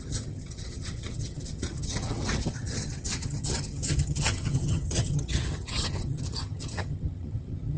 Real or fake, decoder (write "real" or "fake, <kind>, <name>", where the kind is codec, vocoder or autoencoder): fake, vocoder, HiFi-GAN